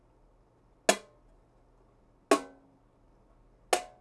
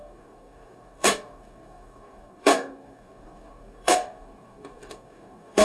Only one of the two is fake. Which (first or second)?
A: second